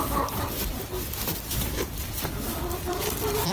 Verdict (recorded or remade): remade